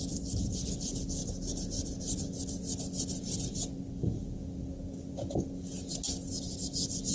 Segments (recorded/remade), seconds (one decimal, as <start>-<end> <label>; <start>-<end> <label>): 0.0-7.1 recorded